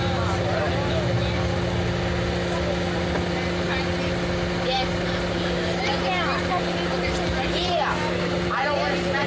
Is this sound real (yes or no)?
yes